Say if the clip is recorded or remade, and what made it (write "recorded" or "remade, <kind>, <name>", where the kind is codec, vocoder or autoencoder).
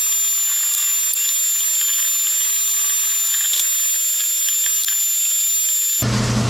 recorded